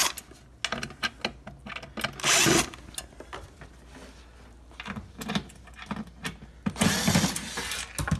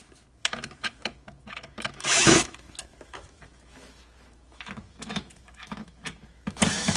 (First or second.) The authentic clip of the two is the first